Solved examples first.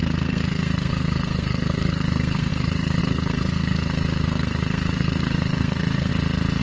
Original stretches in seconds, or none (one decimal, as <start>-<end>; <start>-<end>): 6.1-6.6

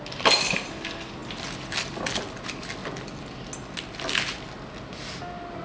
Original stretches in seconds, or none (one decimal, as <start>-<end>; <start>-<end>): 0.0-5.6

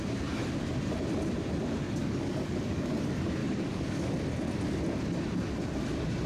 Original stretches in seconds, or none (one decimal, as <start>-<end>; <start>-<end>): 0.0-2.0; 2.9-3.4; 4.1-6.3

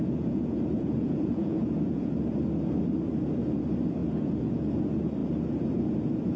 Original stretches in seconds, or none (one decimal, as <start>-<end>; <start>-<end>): 2.1-4.0; 4.7-6.4

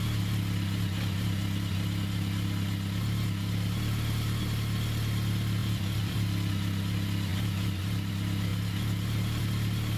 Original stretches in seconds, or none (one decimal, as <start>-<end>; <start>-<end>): 0.0-5.6; 6.5-10.0